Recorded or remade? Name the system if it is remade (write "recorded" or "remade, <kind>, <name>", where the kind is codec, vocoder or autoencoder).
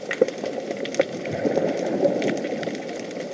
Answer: recorded